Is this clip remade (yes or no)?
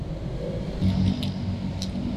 no